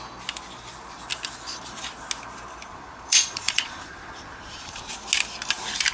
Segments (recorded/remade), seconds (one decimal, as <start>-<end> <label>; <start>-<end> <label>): 0.0-2.7 recorded; 2.7-4.9 remade; 4.9-5.9 recorded

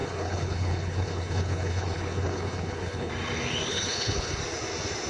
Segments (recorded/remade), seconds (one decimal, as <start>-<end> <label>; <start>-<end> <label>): 0.0-3.1 remade; 3.1-3.7 recorded; 3.7-4.4 remade; 4.4-5.1 recorded

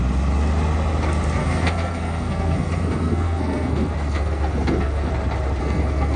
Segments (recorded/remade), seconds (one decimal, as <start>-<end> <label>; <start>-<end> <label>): 0.0-1.4 recorded; 1.4-5.1 remade; 5.1-5.6 recorded; 5.6-6.2 remade

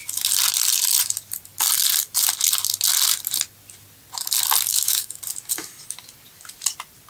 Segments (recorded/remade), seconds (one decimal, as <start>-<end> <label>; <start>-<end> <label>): 0.0-4.7 recorded; 4.7-5.2 remade; 5.2-7.1 recorded

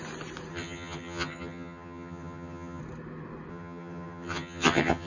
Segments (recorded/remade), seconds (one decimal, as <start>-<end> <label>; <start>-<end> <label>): 0.0-0.5 recorded; 0.5-2.8 remade; 2.8-3.5 recorded; 3.5-5.1 remade

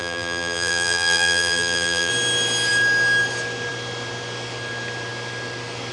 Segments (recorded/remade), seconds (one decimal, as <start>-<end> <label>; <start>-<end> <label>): 0.0-2.1 remade; 2.1-5.9 recorded

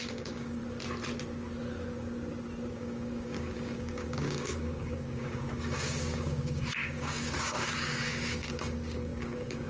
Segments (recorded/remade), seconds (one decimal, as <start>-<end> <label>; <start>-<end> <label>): 0.0-0.6 remade; 0.6-2.7 recorded; 2.7-9.7 remade

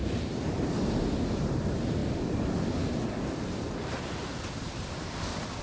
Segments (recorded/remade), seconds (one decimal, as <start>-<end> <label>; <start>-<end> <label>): 0.0-2.0 remade; 2.0-4.7 recorded; 4.7-5.6 remade